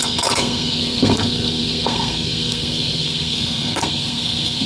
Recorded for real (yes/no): no